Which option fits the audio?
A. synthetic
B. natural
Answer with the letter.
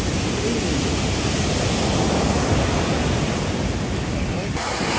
B